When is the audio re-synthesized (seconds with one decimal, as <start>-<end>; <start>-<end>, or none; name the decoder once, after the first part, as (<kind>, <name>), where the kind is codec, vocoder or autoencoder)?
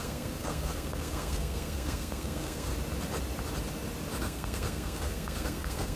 0.0-2.7 (codec, SNAC); 4.2-6.0